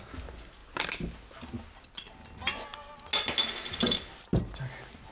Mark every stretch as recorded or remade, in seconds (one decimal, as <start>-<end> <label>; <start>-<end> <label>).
0.0-5.1 recorded